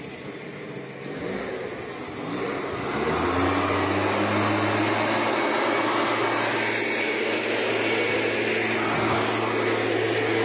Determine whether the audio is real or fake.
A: real